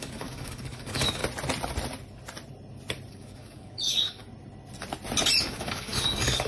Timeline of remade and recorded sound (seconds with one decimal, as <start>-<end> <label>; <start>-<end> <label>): 0.0-1.2 remade; 1.2-3.1 recorded; 3.1-4.2 remade; 4.2-5.4 recorded; 5.4-6.5 remade